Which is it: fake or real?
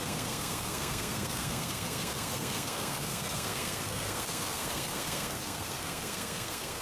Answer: fake